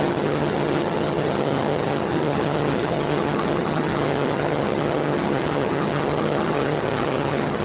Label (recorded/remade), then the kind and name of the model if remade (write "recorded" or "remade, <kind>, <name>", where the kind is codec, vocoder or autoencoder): remade, vocoder, HiFi-GAN